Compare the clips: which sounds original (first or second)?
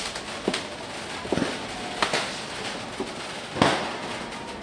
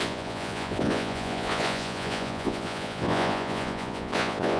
first